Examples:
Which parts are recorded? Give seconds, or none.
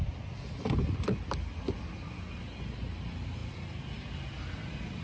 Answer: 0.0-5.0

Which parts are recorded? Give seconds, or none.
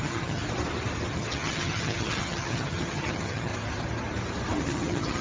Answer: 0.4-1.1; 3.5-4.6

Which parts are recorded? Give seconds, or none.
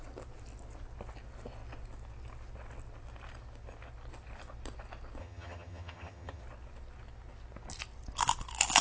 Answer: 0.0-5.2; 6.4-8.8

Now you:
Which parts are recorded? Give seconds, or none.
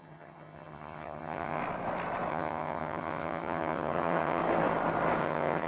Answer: 1.6-2.3; 4.4-5.2